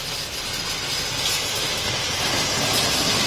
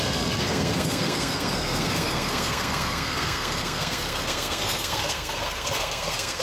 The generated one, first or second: second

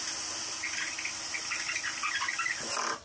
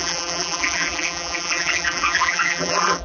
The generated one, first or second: second